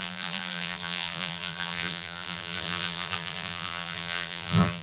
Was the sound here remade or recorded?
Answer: remade